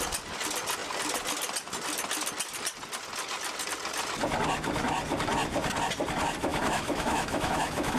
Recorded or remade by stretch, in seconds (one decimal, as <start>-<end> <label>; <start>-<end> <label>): 0.0-6.5 recorded; 6.5-8.0 remade